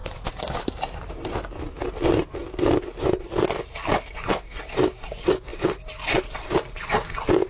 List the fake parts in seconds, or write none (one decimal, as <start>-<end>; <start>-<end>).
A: none